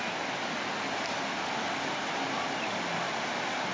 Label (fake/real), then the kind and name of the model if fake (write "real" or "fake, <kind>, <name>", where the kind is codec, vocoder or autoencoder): real